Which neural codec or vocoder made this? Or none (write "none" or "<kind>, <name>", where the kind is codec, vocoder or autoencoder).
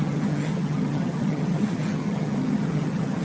vocoder, HiFi-GAN